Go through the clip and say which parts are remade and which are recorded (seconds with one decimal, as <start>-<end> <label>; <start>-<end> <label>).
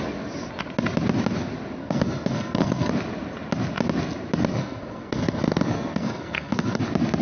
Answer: 0.0-1.8 recorded; 1.8-2.9 remade; 2.9-4.5 recorded; 4.5-6.8 remade; 6.8-7.2 recorded